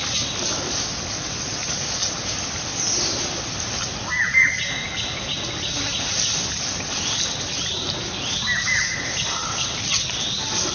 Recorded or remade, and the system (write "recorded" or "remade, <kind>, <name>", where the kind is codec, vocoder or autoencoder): recorded